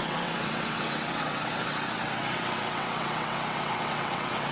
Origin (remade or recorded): remade